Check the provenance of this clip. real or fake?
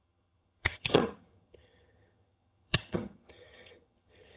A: fake